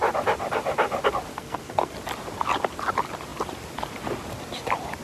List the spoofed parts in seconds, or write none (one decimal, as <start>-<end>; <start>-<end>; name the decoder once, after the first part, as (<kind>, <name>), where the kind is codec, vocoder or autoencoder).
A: 1.3-1.9 (codec, SNAC)